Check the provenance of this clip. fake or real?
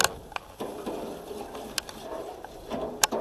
real